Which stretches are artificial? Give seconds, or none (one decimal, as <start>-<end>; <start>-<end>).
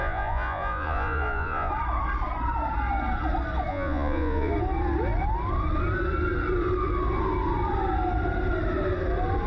0.0-1.7; 3.7-4.5